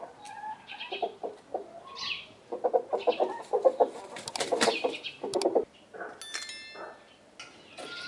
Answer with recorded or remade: recorded